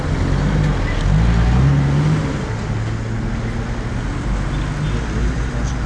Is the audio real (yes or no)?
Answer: yes